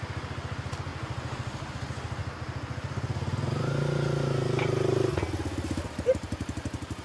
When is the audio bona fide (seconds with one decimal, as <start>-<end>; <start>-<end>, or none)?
0.0-7.0